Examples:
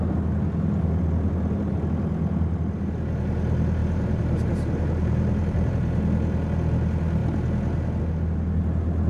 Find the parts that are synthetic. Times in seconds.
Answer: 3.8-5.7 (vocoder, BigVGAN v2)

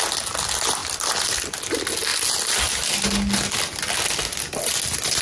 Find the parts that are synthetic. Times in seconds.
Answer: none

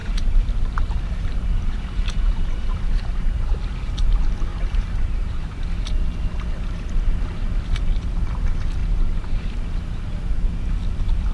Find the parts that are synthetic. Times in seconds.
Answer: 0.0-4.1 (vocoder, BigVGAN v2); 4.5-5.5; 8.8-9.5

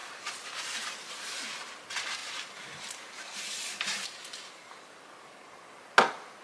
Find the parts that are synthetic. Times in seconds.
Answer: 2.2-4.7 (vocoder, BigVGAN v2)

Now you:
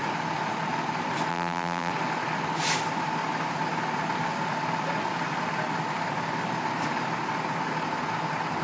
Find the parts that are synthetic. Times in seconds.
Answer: 1.3-1.9 (vocoder, BigVGAN v2)

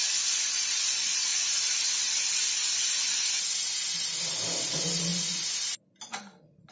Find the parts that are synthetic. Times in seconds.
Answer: none

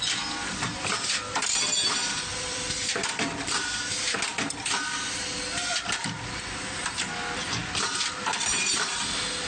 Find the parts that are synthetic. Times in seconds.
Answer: 2.3-3.8 (vocoder, BigVGAN v2); 7.6-8.6

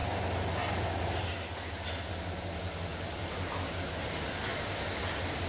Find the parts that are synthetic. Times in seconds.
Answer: 2.9-4.0 (vocoder, BigVGAN v2); 4.5-5.0